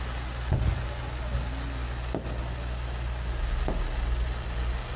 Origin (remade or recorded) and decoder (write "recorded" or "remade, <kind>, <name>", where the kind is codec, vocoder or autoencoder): recorded